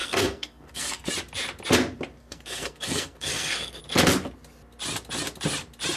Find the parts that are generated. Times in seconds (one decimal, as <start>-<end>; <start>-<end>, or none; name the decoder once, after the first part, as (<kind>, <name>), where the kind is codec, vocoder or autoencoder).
0.0-1.1 (codec, SNAC); 2.2-3.8